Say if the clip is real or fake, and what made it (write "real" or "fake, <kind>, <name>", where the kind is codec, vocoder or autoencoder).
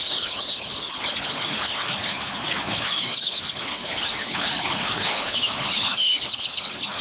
fake, codec, HILCodec